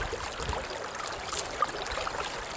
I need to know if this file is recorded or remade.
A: recorded